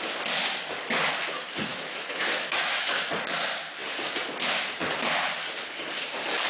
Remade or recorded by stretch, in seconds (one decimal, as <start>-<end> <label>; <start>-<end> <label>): 0.0-1.7 recorded; 1.7-3.1 remade; 3.1-6.5 recorded